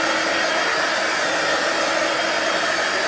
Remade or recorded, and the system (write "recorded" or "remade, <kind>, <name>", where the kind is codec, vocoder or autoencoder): remade, vocoder, BigVGAN v2